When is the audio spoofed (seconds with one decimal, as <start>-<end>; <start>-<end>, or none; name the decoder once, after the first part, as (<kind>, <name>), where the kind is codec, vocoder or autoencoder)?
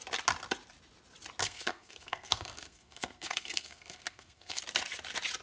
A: 1.4-4.6 (codec, SNAC)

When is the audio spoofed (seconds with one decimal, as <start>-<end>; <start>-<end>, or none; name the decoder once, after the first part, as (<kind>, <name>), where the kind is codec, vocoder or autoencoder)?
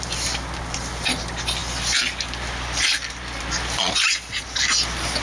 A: none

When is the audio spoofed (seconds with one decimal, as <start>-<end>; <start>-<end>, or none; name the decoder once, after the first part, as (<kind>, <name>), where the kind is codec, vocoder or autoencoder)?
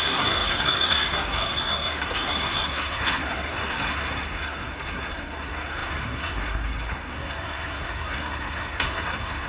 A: 0.0-9.5 (codec, SNAC)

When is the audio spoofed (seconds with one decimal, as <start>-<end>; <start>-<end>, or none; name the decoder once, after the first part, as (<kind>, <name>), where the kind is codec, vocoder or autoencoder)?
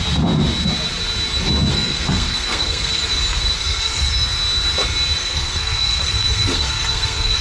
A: 1.7-3.0 (codec, SNAC); 3.6-4.1; 5.2-7.4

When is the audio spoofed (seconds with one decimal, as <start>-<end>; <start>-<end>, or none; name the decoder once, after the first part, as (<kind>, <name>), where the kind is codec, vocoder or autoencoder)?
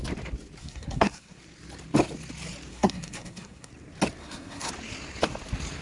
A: 0.6-1.4 (codec, SNAC); 2.7-3.7; 4.2-4.7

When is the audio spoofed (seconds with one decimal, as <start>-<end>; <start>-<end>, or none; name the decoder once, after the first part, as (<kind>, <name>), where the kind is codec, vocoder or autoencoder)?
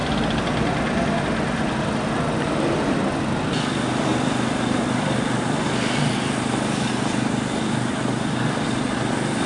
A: none